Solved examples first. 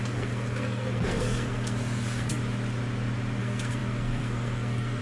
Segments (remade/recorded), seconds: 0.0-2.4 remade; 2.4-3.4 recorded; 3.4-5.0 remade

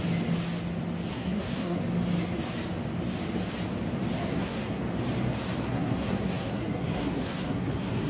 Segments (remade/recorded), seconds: 0.0-1.1 recorded; 1.1-1.8 remade; 1.8-4.3 recorded; 4.3-4.8 remade; 4.8-5.6 recorded; 5.6-8.1 remade

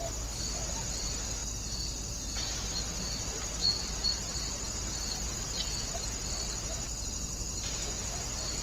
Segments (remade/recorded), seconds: 0.0-8.6 recorded

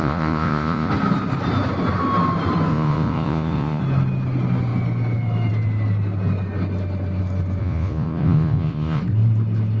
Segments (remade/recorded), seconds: 0.0-0.9 remade; 0.9-2.7 recorded; 2.7-3.8 remade; 3.8-7.6 recorded; 7.6-9.0 remade; 9.0-9.8 recorded